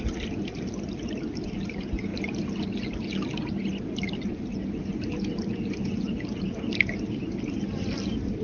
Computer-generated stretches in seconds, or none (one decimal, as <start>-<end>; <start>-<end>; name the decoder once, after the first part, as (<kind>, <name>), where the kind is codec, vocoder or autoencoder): none